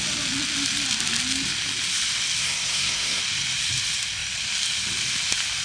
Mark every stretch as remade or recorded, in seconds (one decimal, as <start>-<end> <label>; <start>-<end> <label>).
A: 0.0-2.4 recorded; 2.4-3.2 remade; 3.2-5.6 recorded